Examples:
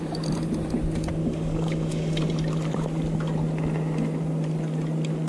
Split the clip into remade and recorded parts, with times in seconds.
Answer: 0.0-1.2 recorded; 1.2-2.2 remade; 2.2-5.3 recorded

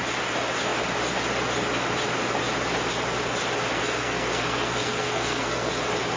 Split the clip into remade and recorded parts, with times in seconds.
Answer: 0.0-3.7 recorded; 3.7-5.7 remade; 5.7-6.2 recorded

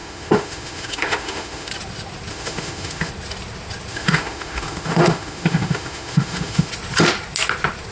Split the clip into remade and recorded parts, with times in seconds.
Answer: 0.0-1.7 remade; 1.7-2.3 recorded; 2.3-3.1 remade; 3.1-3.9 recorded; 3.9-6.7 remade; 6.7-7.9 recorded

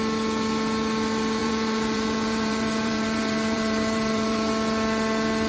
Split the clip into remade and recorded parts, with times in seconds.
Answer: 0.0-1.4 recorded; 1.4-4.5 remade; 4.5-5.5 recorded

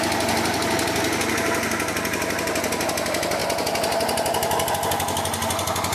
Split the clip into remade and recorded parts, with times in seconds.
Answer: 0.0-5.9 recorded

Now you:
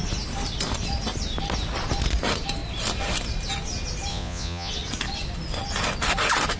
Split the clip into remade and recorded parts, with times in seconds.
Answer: 0.0-4.1 recorded; 4.1-4.7 remade; 4.7-6.6 recorded